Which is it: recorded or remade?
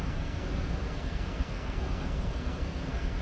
remade